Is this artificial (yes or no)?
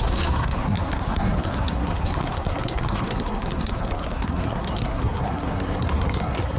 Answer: yes